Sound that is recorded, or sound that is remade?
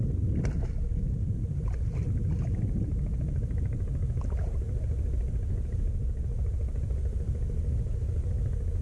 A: recorded